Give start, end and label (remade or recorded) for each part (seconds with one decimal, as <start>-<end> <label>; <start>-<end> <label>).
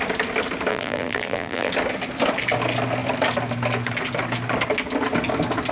0.0-0.7 recorded; 0.7-1.7 remade; 1.7-5.7 recorded